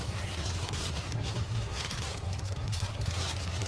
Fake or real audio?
fake